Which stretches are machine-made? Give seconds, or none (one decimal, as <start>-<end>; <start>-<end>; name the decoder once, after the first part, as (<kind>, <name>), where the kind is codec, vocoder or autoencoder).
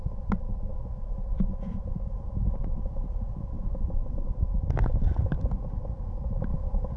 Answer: 0.7-3.8 (vocoder, Vocos)